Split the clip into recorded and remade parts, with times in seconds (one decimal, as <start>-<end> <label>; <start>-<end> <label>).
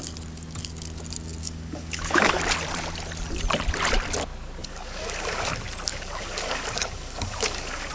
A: 0.0-1.4 recorded; 1.4-2.4 remade; 2.4-4.6 recorded; 4.6-5.5 remade; 5.5-5.9 recorded; 5.9-7.9 remade